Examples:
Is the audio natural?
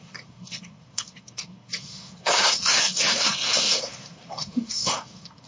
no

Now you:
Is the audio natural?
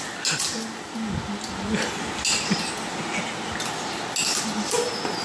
yes